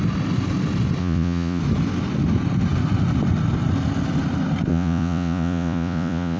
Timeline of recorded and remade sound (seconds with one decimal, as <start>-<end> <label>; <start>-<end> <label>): 0.0-1.0 recorded; 1.0-1.6 remade; 1.6-4.7 recorded; 4.7-6.4 remade